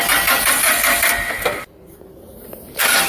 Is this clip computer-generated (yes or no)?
no